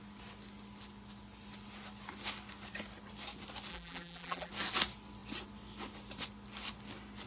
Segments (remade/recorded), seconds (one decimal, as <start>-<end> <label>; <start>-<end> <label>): 0.0-3.7 recorded; 3.7-4.5 remade; 4.5-7.3 recorded